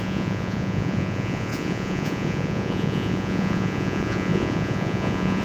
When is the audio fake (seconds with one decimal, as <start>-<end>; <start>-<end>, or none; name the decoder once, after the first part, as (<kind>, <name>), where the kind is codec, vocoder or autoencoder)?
0.0-5.4 (vocoder, Vocos)